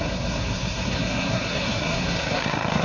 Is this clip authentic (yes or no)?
no